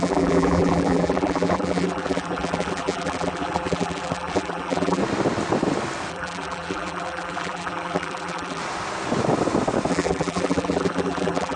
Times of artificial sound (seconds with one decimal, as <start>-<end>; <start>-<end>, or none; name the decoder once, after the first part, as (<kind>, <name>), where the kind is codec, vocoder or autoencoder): 0.0-5.0 (vocoder, BigVGAN v2); 6.1-8.6; 9.9-11.6